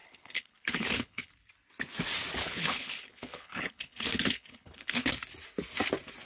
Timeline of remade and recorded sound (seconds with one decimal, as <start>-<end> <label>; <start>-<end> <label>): 0.0-1.3 remade; 1.3-2.4 recorded; 2.4-5.1 remade; 5.1-6.3 recorded